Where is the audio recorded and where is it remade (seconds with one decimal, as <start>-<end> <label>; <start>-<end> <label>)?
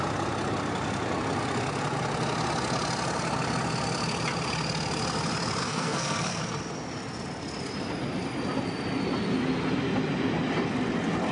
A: 0.0-5.6 recorded; 5.6-6.4 remade; 6.4-11.3 recorded